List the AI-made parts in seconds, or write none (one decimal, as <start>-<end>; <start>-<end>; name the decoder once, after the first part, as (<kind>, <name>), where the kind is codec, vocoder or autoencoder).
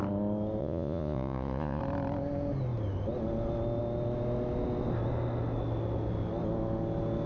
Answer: 0.6-1.8 (vocoder, Vocos)